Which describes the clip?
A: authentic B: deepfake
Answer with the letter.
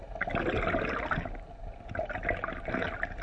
A